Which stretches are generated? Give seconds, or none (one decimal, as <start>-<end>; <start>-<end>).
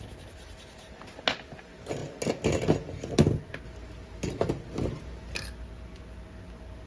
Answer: none